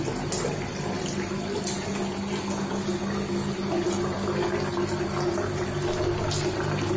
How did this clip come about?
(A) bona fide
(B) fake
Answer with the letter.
A